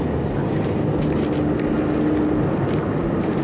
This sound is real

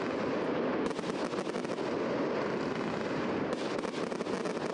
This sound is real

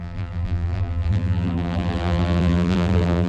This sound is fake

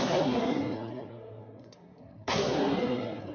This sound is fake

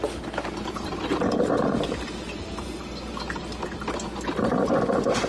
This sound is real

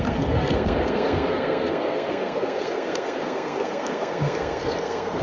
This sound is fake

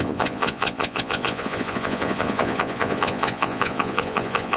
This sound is fake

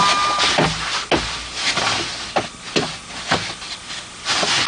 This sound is real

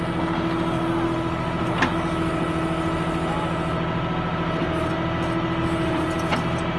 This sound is real